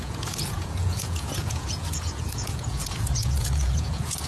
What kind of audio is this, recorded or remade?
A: remade